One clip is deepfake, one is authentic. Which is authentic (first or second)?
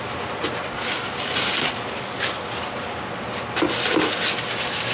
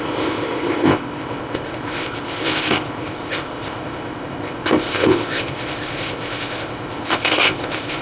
first